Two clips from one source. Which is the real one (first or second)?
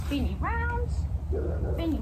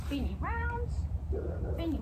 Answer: first